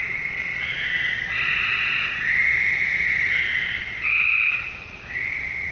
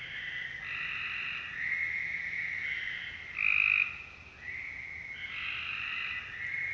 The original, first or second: second